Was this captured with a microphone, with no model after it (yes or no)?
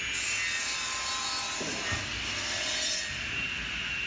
yes